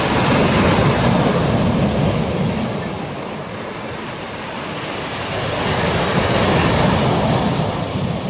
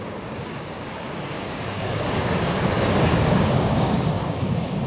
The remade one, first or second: second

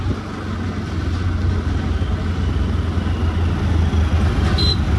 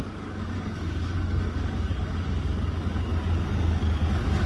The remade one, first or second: second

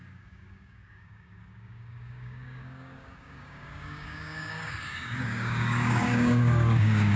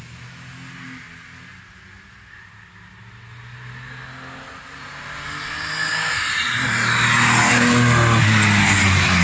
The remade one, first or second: first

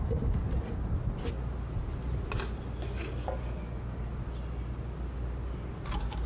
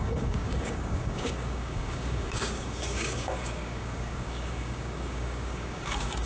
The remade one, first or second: second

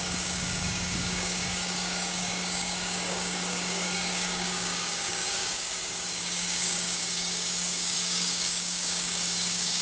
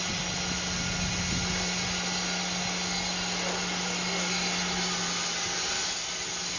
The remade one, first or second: first